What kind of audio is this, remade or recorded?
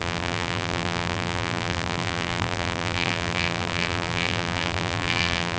remade